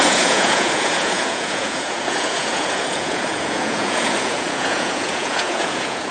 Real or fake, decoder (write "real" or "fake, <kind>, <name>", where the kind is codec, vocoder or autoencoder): fake, vocoder, Vocos